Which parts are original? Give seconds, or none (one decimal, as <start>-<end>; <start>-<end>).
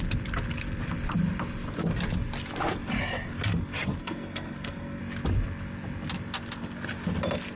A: 0.0-4.0; 5.0-7.6